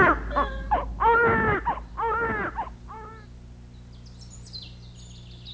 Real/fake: real